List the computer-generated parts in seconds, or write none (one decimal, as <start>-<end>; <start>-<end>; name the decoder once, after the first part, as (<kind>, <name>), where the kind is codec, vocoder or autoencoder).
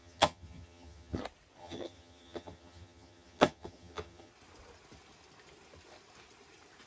0.0-1.2 (vocoder, HiFi-GAN); 1.6-4.3